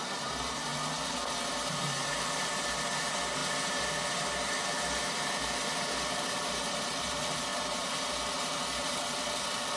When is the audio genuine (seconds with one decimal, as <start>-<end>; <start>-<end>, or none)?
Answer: 0.7-1.5